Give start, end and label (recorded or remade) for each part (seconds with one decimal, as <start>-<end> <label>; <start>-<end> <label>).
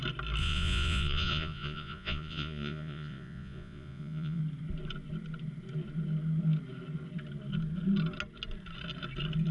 0.0-0.4 recorded; 0.4-4.4 remade; 4.4-9.5 recorded